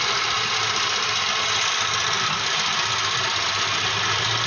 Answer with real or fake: real